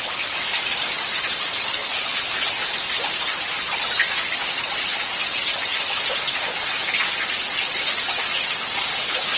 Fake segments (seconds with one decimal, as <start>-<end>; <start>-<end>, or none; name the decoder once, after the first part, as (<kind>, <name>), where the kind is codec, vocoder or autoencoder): 1.8-2.6 (codec, HILCodec); 8.9-9.4